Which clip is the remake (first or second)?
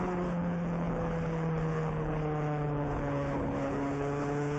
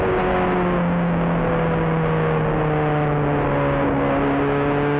first